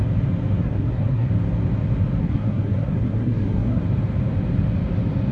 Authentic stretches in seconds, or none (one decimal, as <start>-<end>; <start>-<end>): 0.0-0.6; 1.3-2.2; 3.8-5.3